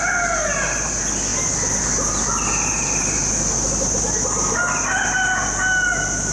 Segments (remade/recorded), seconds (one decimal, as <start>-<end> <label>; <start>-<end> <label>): 0.0-6.3 recorded